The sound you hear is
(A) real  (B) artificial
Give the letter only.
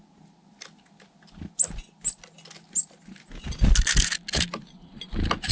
A